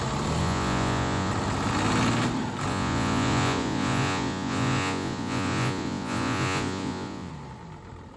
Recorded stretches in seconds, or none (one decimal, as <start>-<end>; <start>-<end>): 0.0-0.4; 1.3-2.7; 7.3-8.2